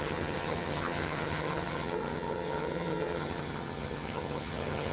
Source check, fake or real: fake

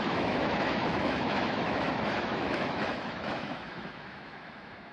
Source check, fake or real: fake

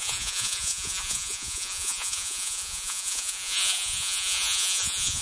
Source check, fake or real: fake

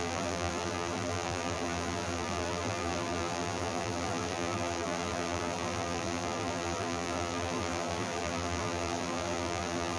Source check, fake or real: fake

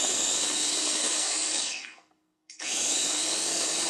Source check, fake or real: fake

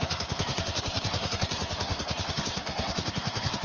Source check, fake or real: fake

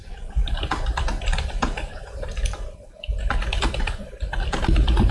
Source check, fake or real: fake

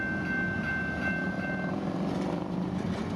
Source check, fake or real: real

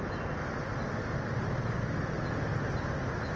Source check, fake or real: real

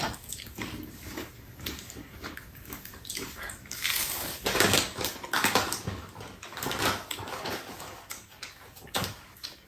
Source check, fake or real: fake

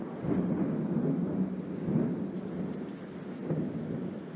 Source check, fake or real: real